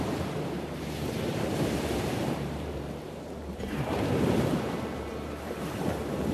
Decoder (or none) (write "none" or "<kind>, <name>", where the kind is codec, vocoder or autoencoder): vocoder, BigVGAN v2